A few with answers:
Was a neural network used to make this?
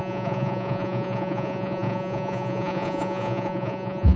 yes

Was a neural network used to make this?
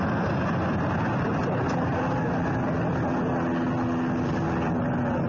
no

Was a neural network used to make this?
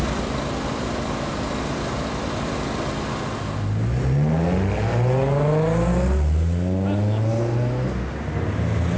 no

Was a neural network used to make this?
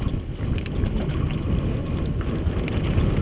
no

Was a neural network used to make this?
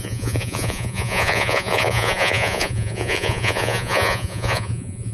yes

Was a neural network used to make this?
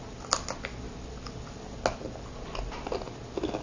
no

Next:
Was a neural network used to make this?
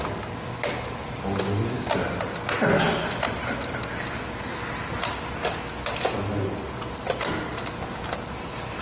no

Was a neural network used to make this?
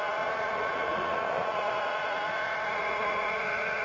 yes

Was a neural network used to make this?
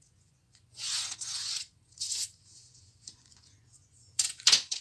yes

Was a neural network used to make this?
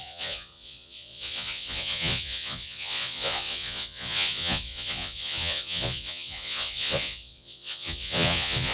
yes